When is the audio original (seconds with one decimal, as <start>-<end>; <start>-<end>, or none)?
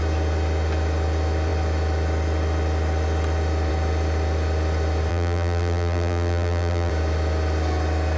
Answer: 0.0-5.1; 6.9-8.2